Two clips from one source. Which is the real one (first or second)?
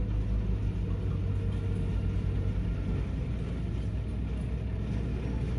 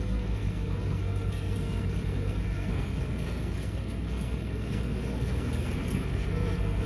first